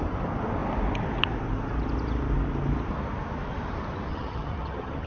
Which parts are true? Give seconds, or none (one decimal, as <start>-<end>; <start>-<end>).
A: 0.0-4.1